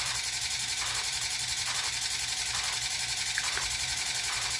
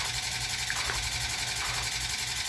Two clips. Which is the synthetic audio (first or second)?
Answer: first